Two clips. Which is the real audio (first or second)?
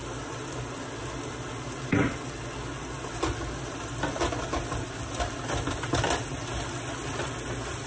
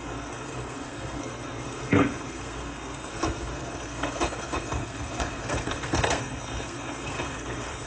first